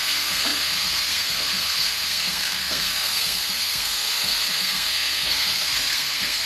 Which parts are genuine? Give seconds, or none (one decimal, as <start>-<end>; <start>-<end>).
none